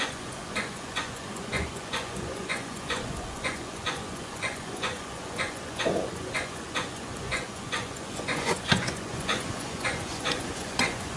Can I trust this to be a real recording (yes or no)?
no